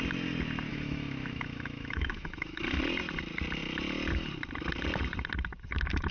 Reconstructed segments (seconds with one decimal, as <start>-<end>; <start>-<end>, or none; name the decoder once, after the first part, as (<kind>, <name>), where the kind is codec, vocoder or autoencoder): 0.7-2.6 (autoencoder, DAC-VAE)